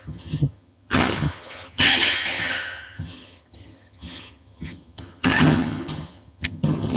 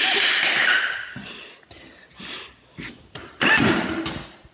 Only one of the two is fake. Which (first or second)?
first